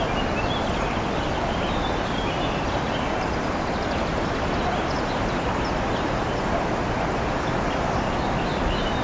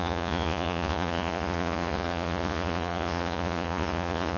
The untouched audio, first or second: first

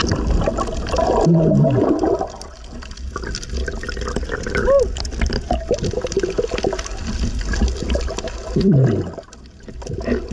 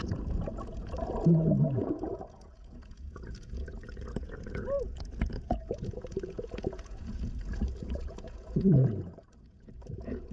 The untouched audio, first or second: first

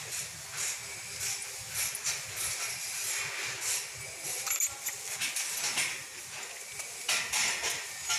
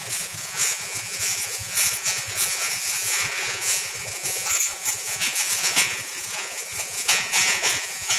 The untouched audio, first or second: first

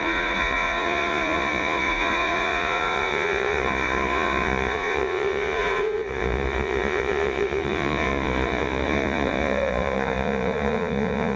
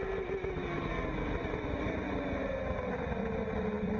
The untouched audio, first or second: second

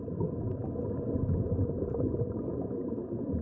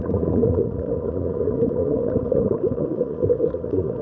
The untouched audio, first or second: first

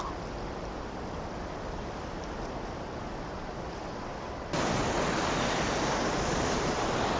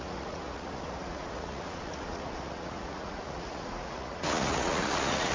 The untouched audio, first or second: first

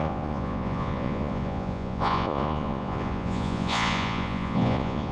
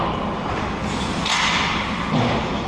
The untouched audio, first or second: second